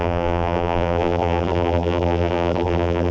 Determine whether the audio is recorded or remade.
remade